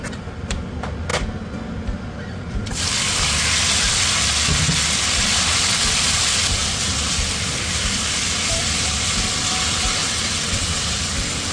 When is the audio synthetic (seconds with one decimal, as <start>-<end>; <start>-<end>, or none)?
10.0-10.8